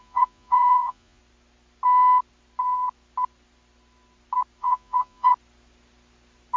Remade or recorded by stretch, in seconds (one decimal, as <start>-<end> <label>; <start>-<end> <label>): 0.0-1.2 remade; 1.2-4.6 recorded; 4.6-5.3 remade; 5.3-6.6 recorded